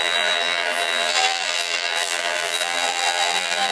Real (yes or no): no